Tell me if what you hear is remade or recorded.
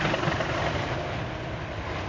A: recorded